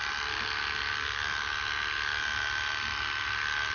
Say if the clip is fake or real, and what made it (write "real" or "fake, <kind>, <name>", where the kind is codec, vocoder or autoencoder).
real